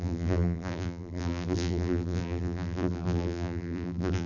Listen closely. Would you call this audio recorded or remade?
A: remade